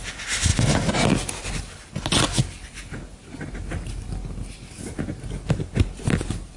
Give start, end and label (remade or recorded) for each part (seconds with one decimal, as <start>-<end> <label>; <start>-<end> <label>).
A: 0.0-6.6 recorded